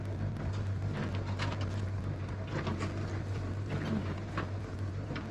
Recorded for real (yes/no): yes